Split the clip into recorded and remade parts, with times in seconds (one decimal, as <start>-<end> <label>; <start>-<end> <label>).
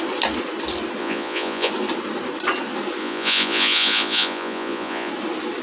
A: 0.0-1.0 recorded; 1.0-1.7 remade; 1.7-3.0 recorded; 3.0-5.1 remade; 5.1-5.6 recorded